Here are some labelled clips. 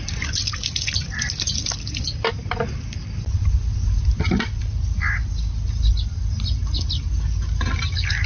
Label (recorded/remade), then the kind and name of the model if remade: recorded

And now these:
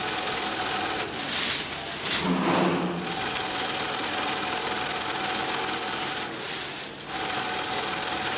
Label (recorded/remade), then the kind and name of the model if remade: recorded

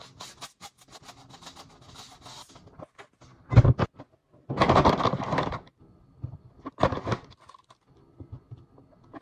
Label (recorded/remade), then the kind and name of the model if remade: recorded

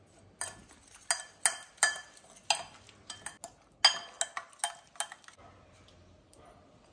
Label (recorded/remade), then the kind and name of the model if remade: recorded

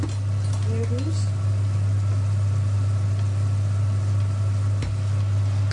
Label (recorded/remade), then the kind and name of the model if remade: recorded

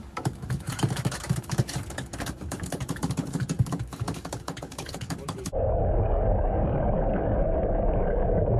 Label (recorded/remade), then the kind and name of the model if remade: remade, codec, DAC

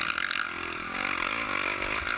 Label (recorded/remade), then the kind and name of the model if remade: recorded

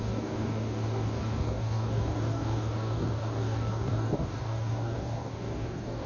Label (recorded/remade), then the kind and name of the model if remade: remade, codec, DAC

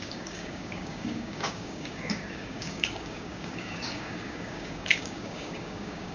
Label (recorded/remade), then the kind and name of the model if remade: remade, codec, DAC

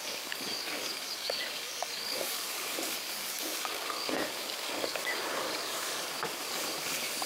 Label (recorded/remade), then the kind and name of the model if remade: remade, codec, DAC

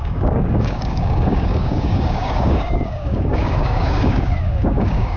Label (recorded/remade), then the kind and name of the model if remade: remade, codec, DAC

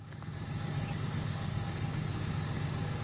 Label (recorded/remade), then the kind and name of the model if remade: remade, codec, DAC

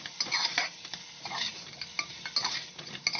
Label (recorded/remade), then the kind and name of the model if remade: recorded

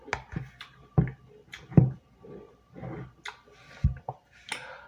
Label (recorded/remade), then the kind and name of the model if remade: recorded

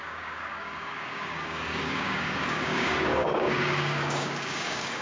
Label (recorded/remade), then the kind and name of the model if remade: remade, codec, DAC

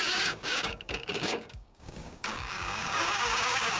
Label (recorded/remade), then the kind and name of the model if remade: remade, codec, DAC